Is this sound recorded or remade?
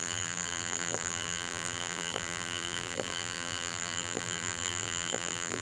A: remade